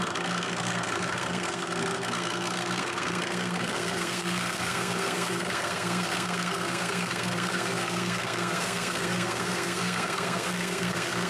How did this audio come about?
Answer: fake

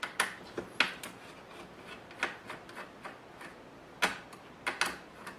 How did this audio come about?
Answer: real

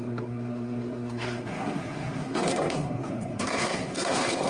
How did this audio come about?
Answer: fake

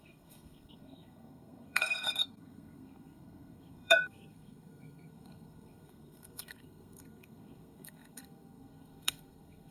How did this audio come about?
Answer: fake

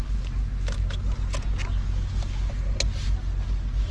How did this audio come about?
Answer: real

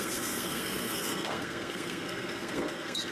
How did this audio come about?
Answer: fake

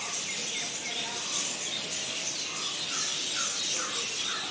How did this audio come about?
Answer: real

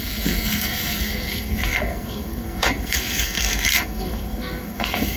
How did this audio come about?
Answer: fake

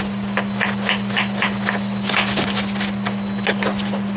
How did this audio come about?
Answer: real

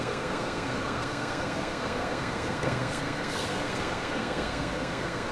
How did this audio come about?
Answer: fake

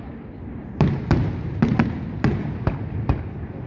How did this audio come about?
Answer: real